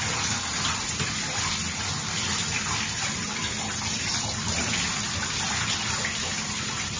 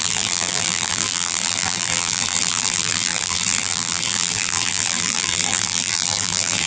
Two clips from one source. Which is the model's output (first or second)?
second